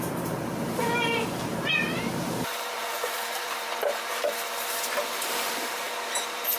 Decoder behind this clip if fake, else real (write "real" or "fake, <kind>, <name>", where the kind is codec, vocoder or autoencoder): fake, vocoder, BigVGAN v2